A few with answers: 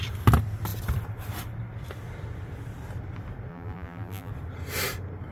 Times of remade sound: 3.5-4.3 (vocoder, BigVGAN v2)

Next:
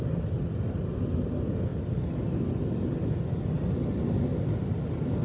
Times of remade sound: none